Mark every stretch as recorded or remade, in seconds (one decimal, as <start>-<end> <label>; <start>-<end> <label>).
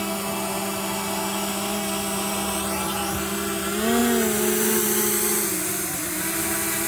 0.0-6.9 recorded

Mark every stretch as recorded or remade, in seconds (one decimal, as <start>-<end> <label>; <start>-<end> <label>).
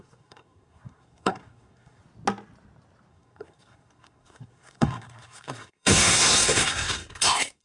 0.0-2.0 remade; 2.0-3.1 recorded; 3.1-7.6 remade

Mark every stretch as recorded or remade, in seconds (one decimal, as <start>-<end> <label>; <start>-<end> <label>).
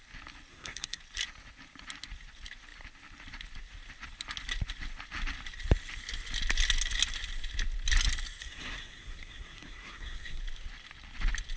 0.0-0.5 recorded; 0.5-1.0 remade; 1.0-8.4 recorded; 8.4-10.4 remade; 10.4-11.6 recorded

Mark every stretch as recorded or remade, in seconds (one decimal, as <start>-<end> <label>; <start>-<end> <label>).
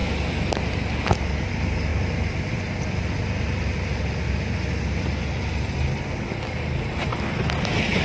0.0-8.0 recorded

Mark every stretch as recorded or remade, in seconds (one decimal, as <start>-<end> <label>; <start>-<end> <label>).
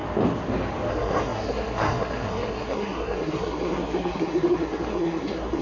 0.0-0.9 recorded; 0.9-5.6 remade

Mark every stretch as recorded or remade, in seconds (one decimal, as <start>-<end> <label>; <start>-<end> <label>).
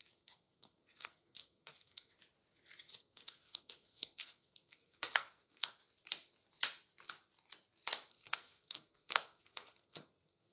0.0-2.1 remade; 2.1-3.0 recorded; 3.0-5.8 remade; 5.8-8.1 recorded; 8.1-10.5 remade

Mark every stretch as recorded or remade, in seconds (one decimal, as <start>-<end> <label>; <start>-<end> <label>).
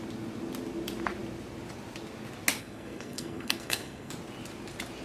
0.0-2.6 recorded; 2.6-4.1 remade; 4.1-5.0 recorded